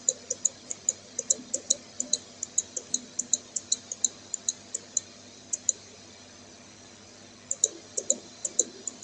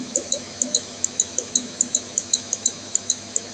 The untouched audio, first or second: first